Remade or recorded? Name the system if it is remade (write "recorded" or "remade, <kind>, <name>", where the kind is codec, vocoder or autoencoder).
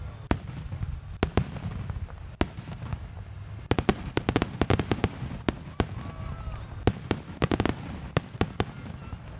recorded